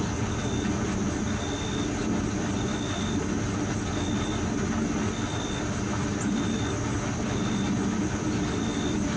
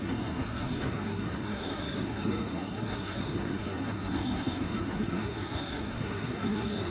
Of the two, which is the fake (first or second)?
second